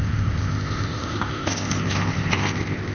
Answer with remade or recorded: remade